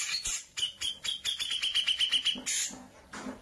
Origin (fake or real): real